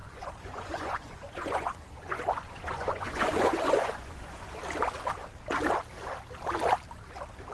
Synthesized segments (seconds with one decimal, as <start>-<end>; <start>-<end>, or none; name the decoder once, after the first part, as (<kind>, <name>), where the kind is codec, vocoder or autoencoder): 0.0-4.5 (vocoder, Vocos)